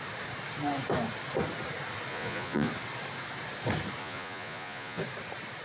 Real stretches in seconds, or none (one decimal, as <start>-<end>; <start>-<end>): 0.0-2.1; 2.7-4.0; 5.0-5.6